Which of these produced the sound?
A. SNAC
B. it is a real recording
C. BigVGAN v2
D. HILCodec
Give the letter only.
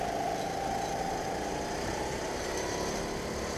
B